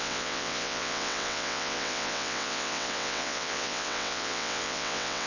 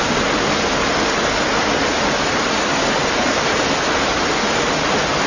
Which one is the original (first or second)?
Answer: second